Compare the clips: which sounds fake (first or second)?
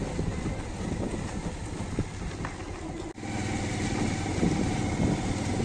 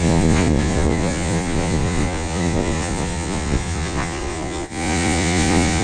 second